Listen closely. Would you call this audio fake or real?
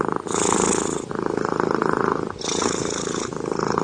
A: real